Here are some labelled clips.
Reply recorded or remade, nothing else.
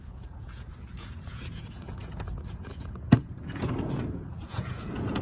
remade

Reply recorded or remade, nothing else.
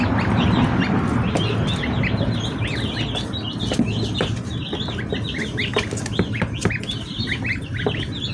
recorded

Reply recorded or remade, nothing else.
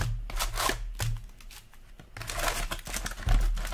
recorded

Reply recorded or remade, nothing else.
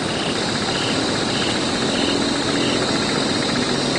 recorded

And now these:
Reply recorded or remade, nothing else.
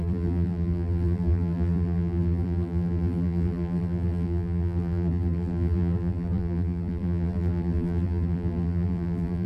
remade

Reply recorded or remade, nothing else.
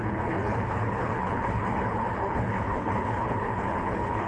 remade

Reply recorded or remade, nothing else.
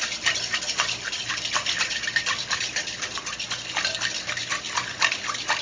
recorded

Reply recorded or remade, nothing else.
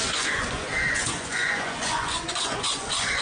remade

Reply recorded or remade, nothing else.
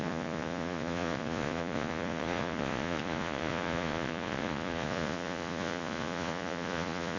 remade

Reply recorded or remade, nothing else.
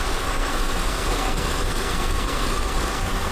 remade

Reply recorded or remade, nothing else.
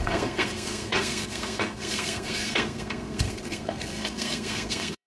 remade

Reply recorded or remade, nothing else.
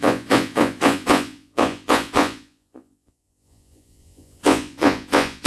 remade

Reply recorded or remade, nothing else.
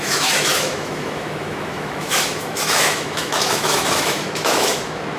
remade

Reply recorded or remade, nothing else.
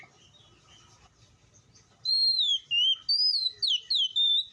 recorded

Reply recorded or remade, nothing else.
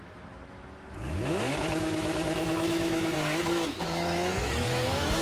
remade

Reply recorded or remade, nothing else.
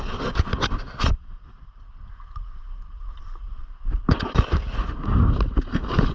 recorded